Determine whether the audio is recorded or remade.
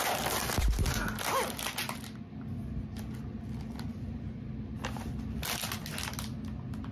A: recorded